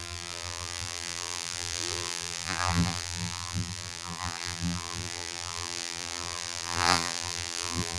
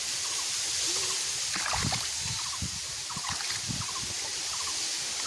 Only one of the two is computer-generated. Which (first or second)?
first